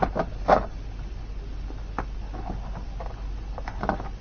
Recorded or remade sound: recorded